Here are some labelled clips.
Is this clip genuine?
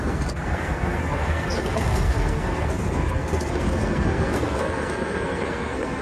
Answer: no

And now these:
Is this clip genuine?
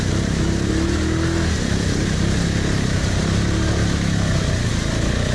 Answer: yes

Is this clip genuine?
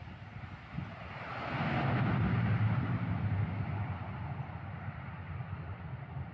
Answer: yes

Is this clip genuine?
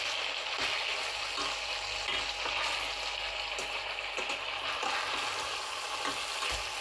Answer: yes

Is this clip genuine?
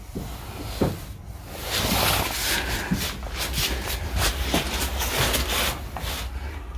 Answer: yes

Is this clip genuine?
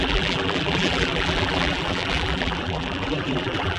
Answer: no